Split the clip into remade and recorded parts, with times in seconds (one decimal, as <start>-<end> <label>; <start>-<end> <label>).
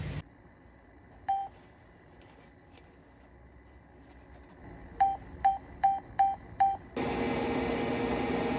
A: 0.0-8.6 recorded